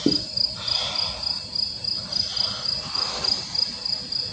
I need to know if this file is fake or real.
real